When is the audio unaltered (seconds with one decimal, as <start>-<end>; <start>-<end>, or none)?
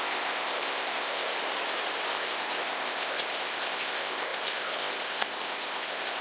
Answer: 1.3-2.1